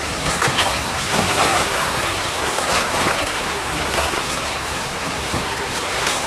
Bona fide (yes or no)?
no